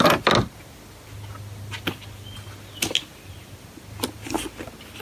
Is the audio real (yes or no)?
yes